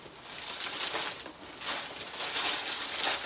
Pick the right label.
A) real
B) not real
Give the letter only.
A